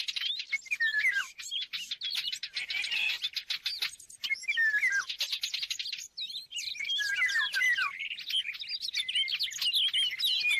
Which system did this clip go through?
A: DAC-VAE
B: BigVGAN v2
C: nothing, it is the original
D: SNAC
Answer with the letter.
C